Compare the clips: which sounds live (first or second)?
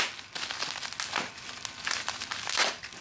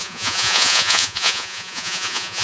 first